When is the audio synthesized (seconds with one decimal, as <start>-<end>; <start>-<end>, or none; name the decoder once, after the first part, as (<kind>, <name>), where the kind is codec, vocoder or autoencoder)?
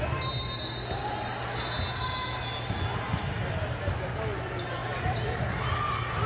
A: none